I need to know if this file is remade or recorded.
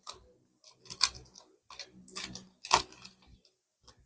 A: recorded